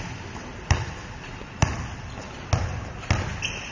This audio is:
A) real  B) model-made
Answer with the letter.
A